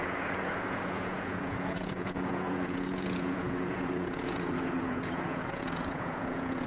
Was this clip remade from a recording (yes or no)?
yes